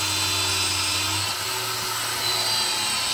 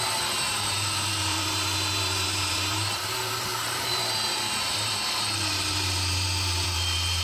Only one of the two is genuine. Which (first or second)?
first